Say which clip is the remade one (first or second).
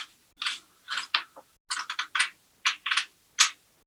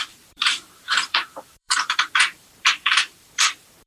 second